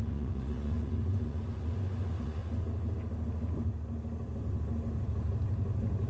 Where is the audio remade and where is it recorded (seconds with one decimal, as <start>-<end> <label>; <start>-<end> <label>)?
0.0-2.4 remade; 2.4-6.1 recorded

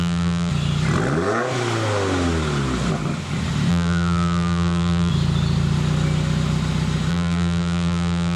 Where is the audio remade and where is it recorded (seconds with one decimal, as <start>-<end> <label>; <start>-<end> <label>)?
0.0-0.5 remade; 0.5-3.7 recorded; 3.7-5.1 remade; 5.1-7.1 recorded; 7.1-8.4 remade

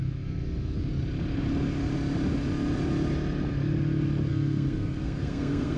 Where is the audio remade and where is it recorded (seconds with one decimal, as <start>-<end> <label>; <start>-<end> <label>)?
0.0-0.9 remade; 0.9-4.3 recorded; 4.3-5.8 remade

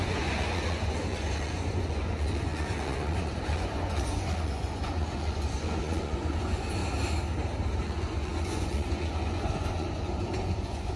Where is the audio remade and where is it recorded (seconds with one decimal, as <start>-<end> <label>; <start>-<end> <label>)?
0.0-6.8 remade; 6.8-7.8 recorded; 7.8-11.0 remade

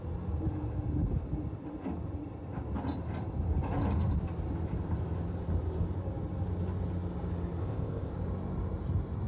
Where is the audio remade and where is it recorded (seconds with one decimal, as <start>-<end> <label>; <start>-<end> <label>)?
0.0-7.6 recorded; 7.6-8.1 remade; 8.1-9.3 recorded

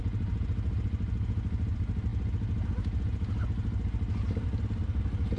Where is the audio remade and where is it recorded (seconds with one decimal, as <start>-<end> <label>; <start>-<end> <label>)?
0.0-5.4 recorded

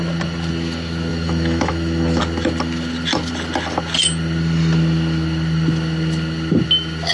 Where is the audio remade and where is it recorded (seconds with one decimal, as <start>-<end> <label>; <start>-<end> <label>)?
0.0-1.1 recorded; 1.1-2.2 remade; 2.2-7.1 recorded